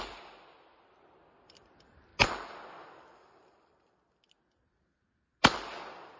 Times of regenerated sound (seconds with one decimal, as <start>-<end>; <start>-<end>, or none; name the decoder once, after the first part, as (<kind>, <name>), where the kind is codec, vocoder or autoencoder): none